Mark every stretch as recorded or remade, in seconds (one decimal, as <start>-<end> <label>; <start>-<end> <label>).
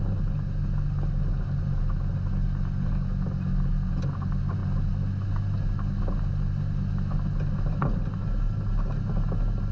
0.0-9.7 recorded